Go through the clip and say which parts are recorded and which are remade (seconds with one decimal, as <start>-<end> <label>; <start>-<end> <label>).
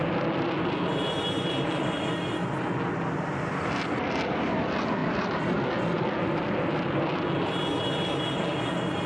0.0-9.1 recorded